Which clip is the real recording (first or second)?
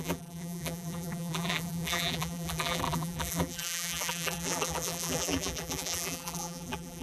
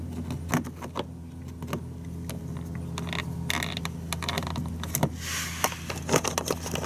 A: second